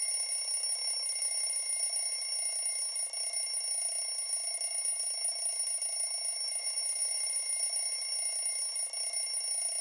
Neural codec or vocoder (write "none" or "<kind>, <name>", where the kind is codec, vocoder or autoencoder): none